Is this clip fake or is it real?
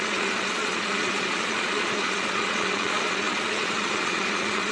fake